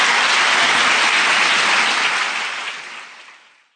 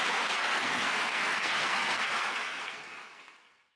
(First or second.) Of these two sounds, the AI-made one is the second